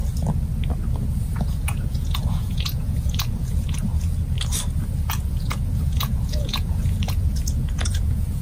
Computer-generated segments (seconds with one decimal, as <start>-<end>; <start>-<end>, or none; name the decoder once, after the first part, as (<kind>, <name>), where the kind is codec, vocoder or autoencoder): 1.3-3.9 (vocoder, Vocos); 5.0-8.4